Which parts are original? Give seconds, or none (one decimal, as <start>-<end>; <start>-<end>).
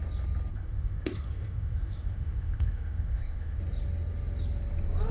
0.0-0.5; 3.6-5.1